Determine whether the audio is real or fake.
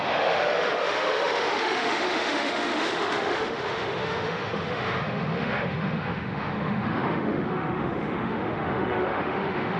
fake